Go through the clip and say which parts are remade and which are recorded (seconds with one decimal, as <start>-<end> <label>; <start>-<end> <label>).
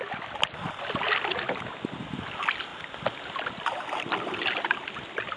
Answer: 0.0-5.4 recorded